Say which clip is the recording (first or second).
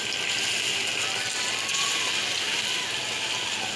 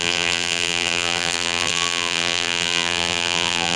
first